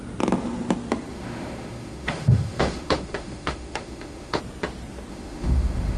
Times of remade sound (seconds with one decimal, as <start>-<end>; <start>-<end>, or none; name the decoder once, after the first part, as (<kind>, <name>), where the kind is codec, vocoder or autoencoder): 1.1-4.4 (autoencoder, DAC-VAE); 5.1-6.0

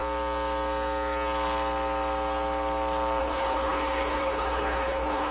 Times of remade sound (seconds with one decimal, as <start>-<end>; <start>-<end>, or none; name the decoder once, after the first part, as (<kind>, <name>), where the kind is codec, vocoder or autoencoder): 3.2-5.3 (codec, HILCodec)

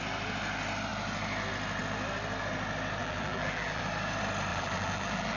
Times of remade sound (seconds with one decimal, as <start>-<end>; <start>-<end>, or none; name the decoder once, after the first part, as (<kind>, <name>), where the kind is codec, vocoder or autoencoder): 3.0-3.8 (vocoder, BigVGAN v2); 4.5-5.4

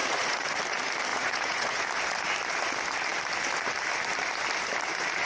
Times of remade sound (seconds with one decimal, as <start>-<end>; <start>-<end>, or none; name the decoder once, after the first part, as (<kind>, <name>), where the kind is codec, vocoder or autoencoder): 0.0-0.6 (vocoder, Vocos); 1.1-1.8